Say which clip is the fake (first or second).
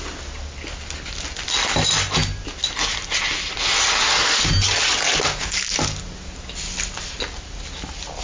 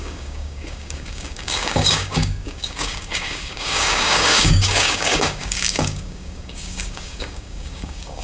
second